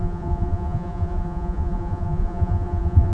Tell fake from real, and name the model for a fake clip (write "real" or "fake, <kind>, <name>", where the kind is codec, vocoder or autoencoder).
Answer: fake, vocoder, Vocos